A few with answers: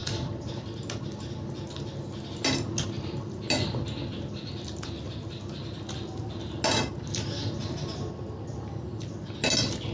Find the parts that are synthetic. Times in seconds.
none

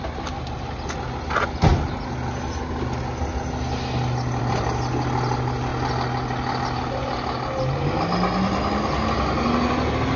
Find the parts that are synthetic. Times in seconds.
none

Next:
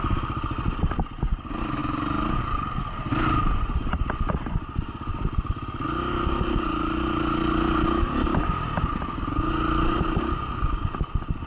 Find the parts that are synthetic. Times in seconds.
none

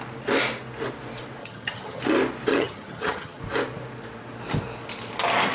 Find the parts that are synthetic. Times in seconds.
1.4-2.0 (vocoder, HiFi-GAN); 2.5-3.4

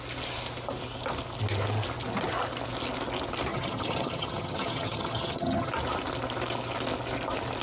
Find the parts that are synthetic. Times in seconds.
3.5-5.7 (vocoder, HiFi-GAN)

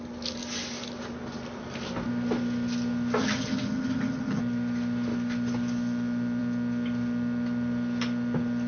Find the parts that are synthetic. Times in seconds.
3.2-4.4 (vocoder, HiFi-GAN)